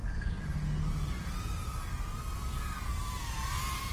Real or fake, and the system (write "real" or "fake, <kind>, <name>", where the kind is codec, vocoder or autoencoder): real